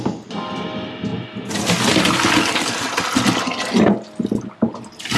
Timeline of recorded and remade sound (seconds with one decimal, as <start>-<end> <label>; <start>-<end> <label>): 0.0-5.2 recorded